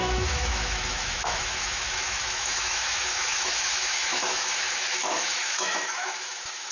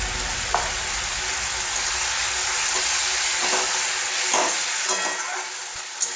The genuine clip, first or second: second